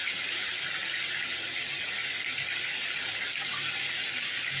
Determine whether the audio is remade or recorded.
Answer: recorded